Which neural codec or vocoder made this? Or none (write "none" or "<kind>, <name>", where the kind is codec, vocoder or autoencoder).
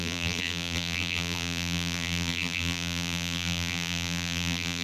vocoder, BigVGAN v2